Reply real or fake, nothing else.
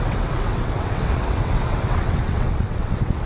fake